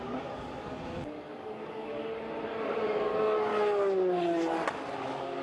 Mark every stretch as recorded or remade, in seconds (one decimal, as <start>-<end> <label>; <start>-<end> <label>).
0.0-2.1 remade; 2.1-2.6 recorded; 2.6-3.5 remade; 3.5-5.0 recorded; 5.0-5.4 remade